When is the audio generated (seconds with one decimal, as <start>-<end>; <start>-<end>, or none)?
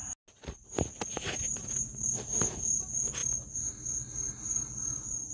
none